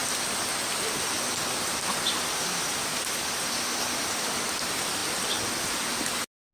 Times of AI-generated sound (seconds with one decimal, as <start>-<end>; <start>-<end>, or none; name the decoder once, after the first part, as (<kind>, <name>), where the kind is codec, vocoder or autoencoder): none

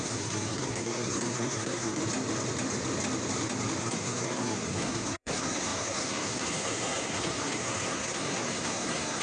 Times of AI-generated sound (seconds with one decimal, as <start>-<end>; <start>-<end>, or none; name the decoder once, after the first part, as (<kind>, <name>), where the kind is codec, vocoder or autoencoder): 0.0-2.0 (codec, SNAC); 3.8-9.2

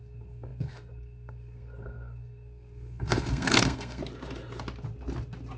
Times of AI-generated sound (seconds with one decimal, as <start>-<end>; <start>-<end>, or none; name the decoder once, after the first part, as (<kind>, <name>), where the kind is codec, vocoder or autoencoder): 0.0-4.0 (codec, SNAC)

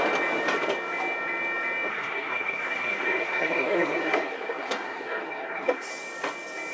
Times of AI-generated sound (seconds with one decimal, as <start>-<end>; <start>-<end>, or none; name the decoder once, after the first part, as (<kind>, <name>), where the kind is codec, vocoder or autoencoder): 1.9-5.9 (codec, SNAC)

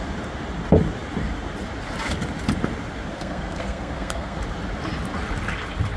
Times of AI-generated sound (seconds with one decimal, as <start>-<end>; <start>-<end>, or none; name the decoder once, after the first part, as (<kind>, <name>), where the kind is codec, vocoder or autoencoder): 3.1-4.4 (codec, SNAC)